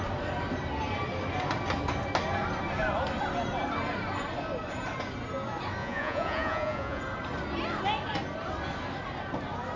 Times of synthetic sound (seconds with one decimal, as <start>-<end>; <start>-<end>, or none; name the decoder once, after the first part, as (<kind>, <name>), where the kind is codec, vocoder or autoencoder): 5.8-7.0 (vocoder, Vocos)